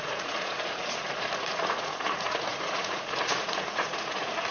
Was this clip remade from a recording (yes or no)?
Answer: yes